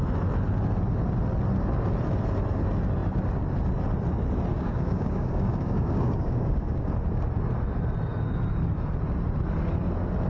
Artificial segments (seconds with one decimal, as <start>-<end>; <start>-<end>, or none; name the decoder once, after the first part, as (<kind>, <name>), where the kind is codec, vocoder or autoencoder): 4.5-6.9 (codec, DAC)